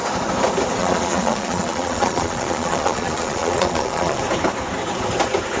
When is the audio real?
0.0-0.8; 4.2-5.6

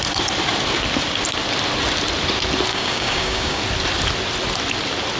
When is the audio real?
0.0-2.7; 3.6-5.2

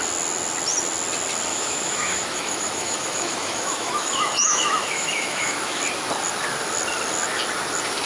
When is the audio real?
0.0-1.5; 5.8-8.1

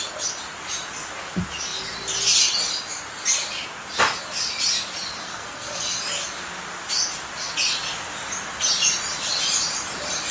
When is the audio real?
0.0-5.2; 5.8-10.3

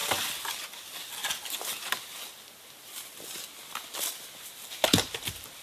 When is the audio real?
0.0-5.6